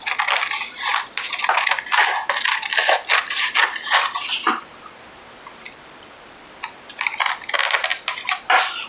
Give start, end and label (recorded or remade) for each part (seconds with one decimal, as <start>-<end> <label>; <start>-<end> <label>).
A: 0.0-8.9 recorded